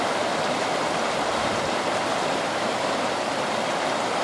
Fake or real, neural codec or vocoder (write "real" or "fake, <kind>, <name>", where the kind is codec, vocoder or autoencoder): fake, vocoder, BigVGAN v2